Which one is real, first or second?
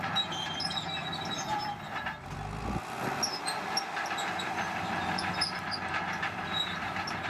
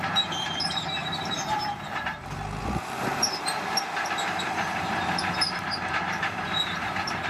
first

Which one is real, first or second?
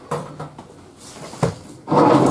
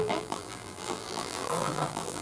first